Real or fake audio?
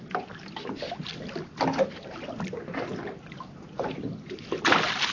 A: real